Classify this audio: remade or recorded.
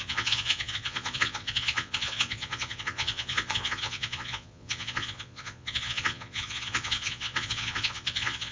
remade